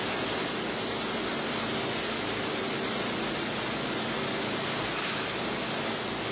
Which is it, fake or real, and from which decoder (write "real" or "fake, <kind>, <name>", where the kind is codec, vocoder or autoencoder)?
real